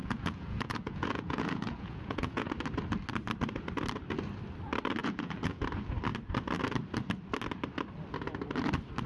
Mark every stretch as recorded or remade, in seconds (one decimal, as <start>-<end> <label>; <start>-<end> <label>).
0.0-2.5 remade; 2.5-5.0 recorded; 5.0-5.6 remade; 5.6-9.1 recorded